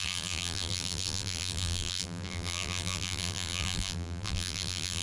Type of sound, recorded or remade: remade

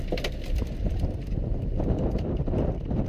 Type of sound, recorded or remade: recorded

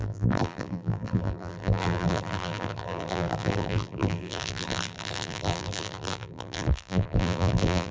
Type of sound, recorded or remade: remade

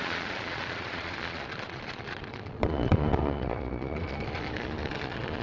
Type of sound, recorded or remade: remade